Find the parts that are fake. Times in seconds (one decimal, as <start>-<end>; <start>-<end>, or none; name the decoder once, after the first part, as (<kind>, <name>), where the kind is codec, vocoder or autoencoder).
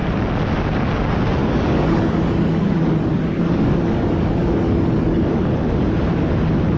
1.4-5.5 (codec, DAC)